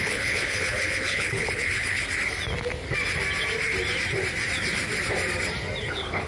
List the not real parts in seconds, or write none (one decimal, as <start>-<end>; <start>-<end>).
0.0-2.0; 5.8-6.3